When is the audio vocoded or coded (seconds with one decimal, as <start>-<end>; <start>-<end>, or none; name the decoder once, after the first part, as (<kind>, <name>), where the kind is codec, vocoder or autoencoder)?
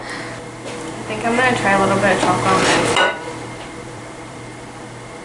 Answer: 2.1-4.5 (vocoder, BigVGAN v2)